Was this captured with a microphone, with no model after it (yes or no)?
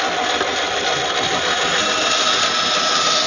yes